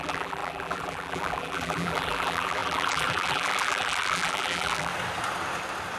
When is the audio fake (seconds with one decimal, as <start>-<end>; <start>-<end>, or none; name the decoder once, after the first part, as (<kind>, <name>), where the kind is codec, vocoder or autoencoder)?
0.0-4.9 (vocoder, BigVGAN v2)